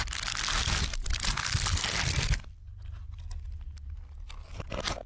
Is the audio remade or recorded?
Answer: recorded